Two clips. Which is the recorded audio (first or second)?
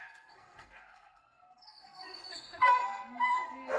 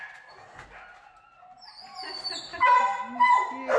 second